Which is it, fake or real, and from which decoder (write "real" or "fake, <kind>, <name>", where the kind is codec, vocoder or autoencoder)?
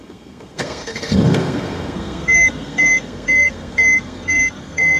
fake, codec, SNAC